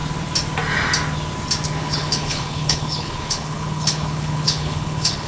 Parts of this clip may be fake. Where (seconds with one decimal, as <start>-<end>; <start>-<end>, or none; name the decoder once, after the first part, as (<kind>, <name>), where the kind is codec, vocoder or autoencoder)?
1.8-5.3 (codec, HILCodec)